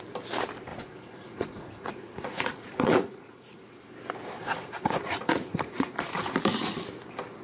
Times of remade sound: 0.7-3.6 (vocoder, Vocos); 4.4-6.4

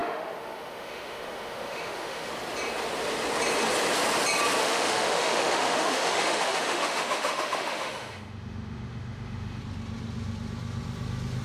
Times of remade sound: 0.0-2.3 (autoencoder, DAC-VAE); 4.6-9.6

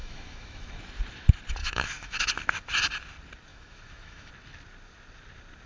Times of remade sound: 0.0-0.7 (autoencoder, DAC-VAE); 1.6-2.3; 3.5-4.3

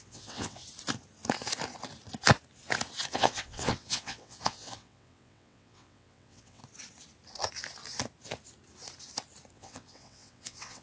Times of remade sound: 0.0-0.6 (vocoder, WaveNeXt); 3.1-6.6; 9.5-10.8